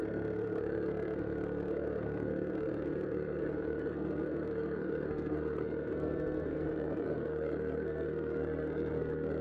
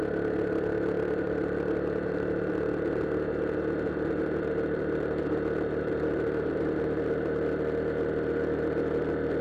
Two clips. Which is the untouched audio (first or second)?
second